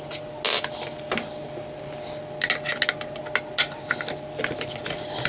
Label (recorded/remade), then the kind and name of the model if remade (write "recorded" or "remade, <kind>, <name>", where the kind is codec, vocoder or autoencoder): recorded